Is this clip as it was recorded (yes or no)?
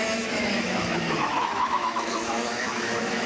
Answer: no